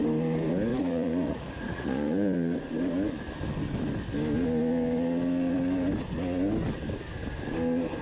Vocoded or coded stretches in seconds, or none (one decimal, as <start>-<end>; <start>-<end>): 0.7-2.6